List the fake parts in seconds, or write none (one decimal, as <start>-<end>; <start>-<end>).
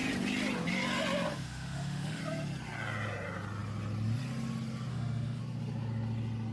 1.3-2.2; 4.9-5.4